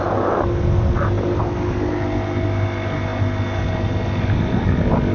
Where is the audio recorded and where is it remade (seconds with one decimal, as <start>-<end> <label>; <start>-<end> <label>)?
0.0-5.1 recorded